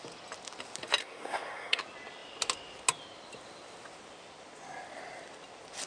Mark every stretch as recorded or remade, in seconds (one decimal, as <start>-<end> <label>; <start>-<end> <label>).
0.0-1.0 recorded; 1.0-1.8 remade; 1.8-5.9 recorded